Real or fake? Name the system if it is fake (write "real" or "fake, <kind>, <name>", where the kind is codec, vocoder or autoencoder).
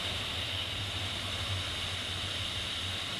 fake, vocoder, BigVGAN v2